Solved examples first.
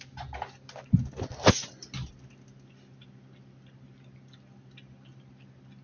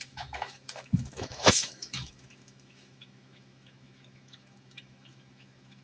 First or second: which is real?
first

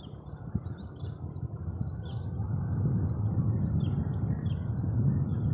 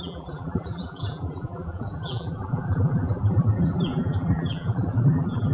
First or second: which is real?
first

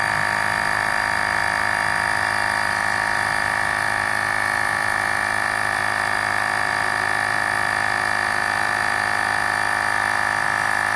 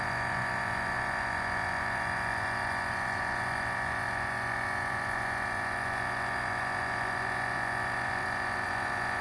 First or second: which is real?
first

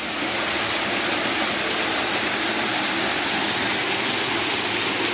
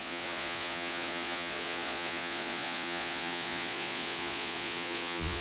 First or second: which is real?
first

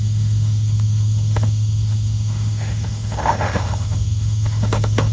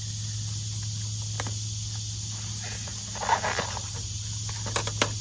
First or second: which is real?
second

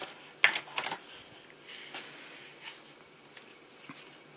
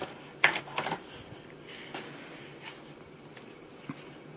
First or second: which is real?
first